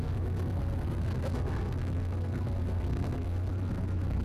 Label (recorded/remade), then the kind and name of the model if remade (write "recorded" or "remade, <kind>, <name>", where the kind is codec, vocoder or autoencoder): remade, codec, SNAC